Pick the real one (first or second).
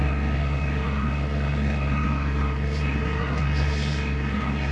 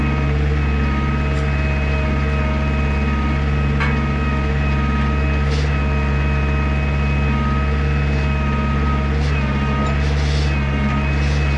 second